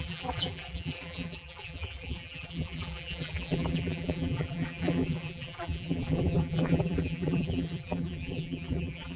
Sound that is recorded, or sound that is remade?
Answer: remade